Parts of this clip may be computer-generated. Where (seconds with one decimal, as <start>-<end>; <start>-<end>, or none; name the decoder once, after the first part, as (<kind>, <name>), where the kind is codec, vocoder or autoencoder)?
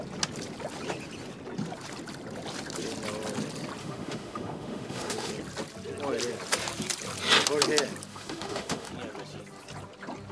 3.8-5.3 (autoencoder, DAC-VAE); 8.1-8.9